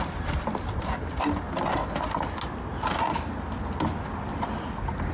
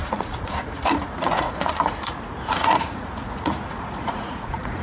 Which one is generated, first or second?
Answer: second